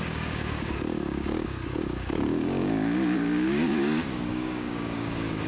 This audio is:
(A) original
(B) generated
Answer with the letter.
B